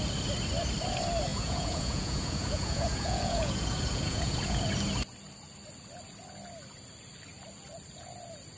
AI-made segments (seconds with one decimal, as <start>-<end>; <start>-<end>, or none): 1.3-4.6

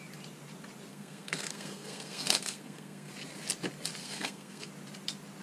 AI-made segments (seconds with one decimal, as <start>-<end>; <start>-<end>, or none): 0.9-3.1; 4.0-4.7

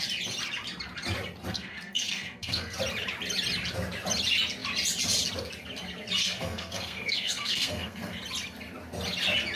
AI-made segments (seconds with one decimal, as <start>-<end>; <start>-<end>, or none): 1.5-2.8; 6.2-8.2

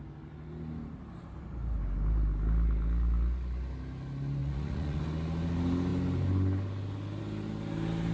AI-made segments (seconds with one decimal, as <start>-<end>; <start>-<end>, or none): 4.4-5.0